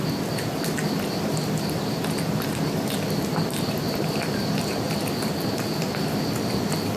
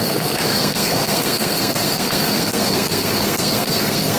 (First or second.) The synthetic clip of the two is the second